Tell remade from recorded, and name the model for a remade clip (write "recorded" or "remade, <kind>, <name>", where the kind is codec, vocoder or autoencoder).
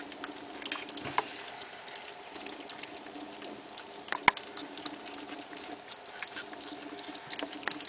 recorded